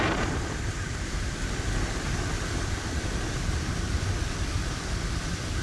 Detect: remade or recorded recorded